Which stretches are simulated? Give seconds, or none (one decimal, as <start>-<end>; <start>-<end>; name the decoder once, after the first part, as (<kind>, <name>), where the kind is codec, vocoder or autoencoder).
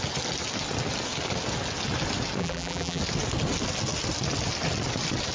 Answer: 2.4-3.0 (vocoder, BigVGAN v2)